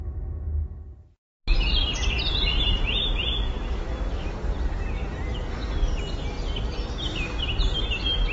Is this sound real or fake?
real